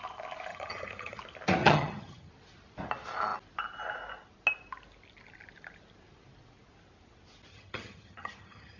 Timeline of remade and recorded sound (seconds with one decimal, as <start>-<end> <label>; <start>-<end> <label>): 0.0-0.5 recorded; 0.5-1.2 remade; 1.2-1.6 recorded; 1.6-2.3 remade; 2.3-7.5 recorded; 7.5-8.8 remade